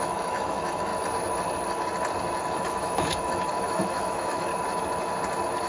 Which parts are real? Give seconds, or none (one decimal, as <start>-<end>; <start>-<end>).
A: 0.9-2.4; 4.5-5.7